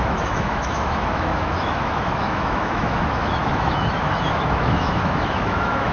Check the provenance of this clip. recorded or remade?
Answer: remade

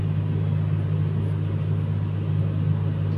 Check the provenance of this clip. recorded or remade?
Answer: recorded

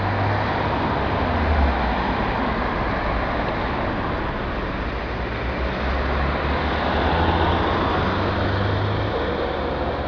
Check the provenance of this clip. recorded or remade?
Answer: recorded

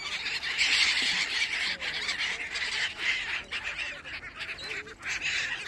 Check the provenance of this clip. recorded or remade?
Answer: recorded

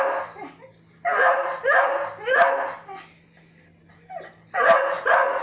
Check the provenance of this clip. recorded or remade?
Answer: recorded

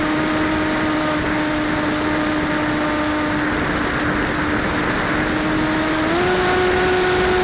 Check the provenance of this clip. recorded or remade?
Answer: recorded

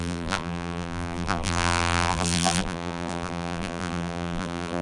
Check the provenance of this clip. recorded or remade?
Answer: remade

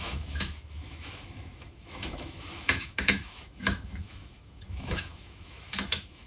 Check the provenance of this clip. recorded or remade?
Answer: remade